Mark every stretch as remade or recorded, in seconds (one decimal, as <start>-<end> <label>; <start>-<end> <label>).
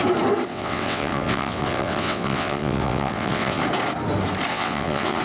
0.0-0.5 recorded; 0.5-3.6 remade; 3.6-4.5 recorded; 4.5-5.2 remade